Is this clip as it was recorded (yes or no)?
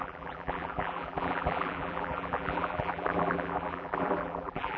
no